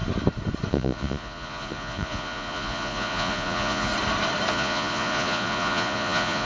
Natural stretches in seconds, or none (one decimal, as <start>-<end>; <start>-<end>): 0.0-0.7; 3.9-4.5